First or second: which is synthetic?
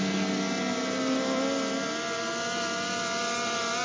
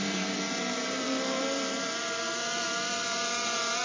second